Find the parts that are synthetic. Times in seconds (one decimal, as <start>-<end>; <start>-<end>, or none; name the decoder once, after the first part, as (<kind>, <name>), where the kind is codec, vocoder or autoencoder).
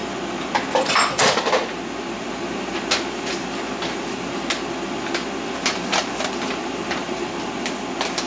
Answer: 6.6-7.2 (vocoder, BigVGAN v2)